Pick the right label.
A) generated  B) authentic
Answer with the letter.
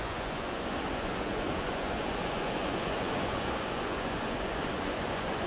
A